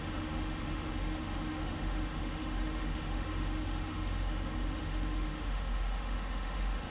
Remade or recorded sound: remade